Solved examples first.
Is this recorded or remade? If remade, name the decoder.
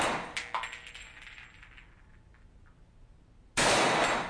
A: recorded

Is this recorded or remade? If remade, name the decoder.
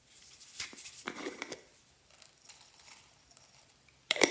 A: remade, vocoder, BigVGAN v2